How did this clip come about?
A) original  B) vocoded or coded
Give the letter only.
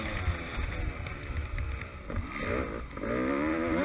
A